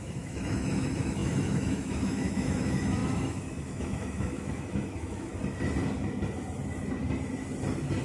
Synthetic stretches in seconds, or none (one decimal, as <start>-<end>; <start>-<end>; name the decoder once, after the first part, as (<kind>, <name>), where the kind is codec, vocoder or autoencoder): 0.0-5.3 (autoencoder, DAC-VAE)